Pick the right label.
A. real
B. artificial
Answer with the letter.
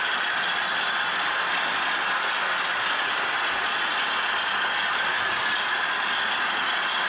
A